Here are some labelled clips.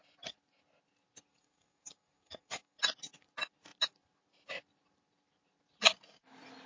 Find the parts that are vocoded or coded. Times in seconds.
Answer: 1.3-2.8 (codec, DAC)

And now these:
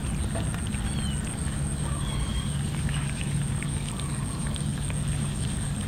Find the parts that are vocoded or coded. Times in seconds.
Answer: 1.3-5.9 (codec, DAC)

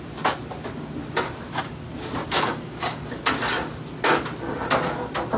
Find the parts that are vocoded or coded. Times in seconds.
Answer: 2.2-3.0 (codec, DAC)

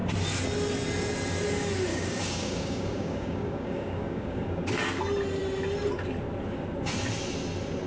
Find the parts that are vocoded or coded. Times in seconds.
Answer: 1.9-4.7 (codec, DAC)

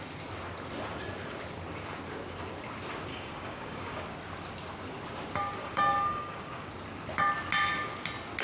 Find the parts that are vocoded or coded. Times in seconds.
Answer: 3.1-4.0 (codec, DAC); 5.6-6.7

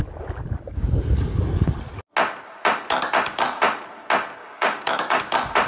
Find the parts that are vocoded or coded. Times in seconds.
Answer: 4.4-5.2 (codec, DAC)

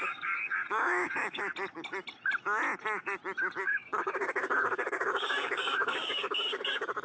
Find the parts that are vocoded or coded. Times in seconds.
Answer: 0.0-1.4 (codec, DAC); 3.6-7.0